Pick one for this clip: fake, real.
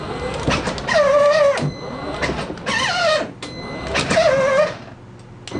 real